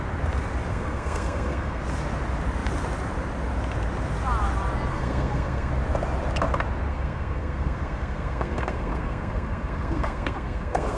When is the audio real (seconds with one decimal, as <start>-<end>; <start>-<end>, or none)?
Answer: 0.0-0.7; 1.8-4.9; 5.7-6.9